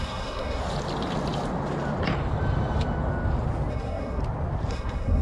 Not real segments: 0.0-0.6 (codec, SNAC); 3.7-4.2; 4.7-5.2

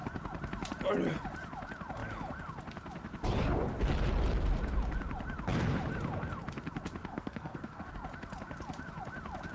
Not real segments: 7.1-7.9 (codec, SNAC)

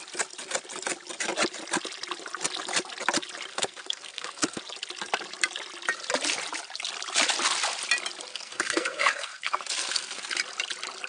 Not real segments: 3.5-4.6 (codec, SNAC); 8.3-10.4